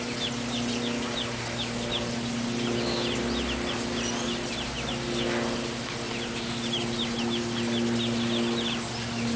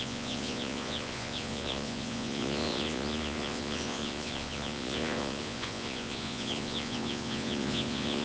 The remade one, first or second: second